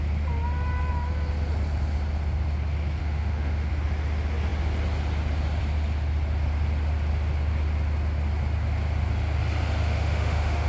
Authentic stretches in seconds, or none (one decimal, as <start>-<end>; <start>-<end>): 0.0-3.0; 3.7-9.8